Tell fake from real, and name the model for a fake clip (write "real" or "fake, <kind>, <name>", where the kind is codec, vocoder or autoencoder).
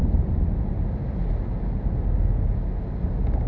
real